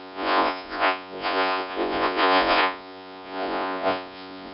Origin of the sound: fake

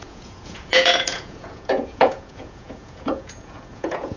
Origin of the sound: fake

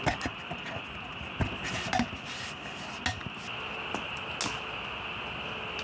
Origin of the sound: real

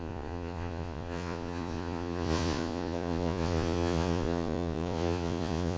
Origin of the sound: fake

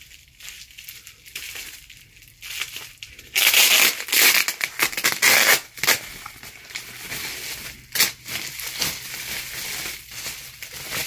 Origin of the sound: real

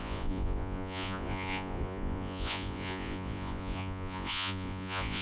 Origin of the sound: fake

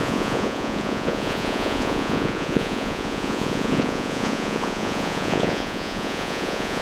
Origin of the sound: fake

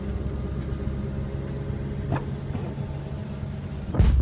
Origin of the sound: real